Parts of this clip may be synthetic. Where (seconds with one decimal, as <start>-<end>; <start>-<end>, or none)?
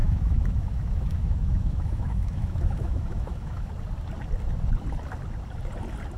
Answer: 0.0-3.7